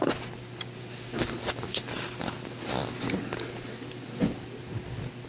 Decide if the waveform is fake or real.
real